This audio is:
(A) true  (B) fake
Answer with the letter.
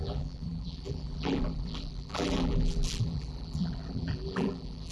B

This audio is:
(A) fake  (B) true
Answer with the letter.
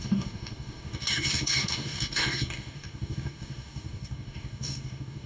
A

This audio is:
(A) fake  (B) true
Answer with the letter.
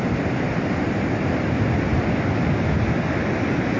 B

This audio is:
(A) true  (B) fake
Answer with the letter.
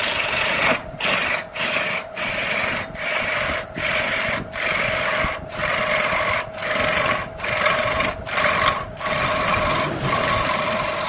A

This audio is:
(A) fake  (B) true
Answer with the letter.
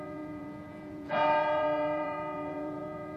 A